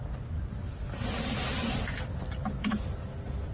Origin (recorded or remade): recorded